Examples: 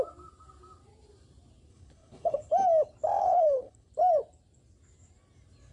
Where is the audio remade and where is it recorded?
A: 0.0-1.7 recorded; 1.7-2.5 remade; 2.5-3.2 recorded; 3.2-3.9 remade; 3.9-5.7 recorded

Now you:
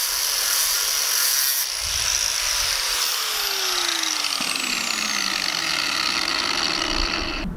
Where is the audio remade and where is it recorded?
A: 0.0-7.6 recorded

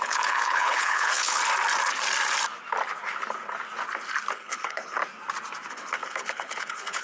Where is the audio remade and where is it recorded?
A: 0.0-1.4 remade; 1.4-4.3 recorded; 4.3-5.0 remade; 5.0-5.7 recorded; 5.7-7.0 remade

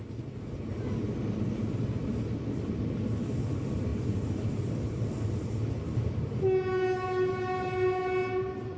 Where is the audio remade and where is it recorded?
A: 0.0-8.8 recorded

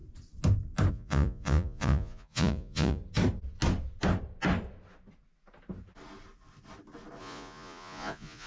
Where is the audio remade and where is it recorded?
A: 0.0-0.9 recorded; 0.9-3.0 remade; 3.0-7.2 recorded; 7.2-8.5 remade

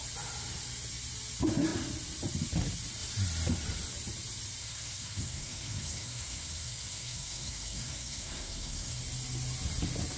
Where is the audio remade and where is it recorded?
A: 0.0-4.6 recorded; 4.6-9.0 remade; 9.0-10.2 recorded

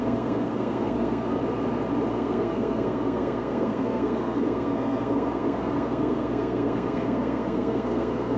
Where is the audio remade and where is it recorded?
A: 0.0-1.4 remade; 1.4-2.1 recorded; 2.1-8.4 remade

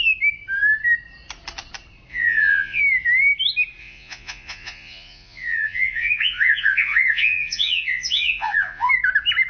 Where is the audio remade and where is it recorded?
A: 0.0-2.1 recorded; 2.1-2.8 remade; 2.8-3.8 recorded; 3.8-8.9 remade; 8.9-9.5 recorded